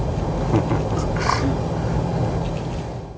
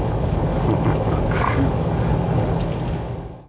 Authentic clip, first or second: first